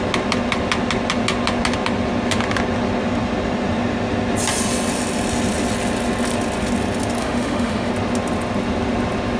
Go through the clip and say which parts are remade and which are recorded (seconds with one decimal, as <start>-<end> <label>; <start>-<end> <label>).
0.0-7.2 recorded; 7.2-7.9 remade; 7.9-9.4 recorded